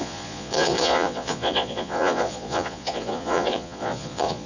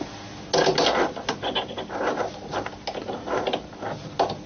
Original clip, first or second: second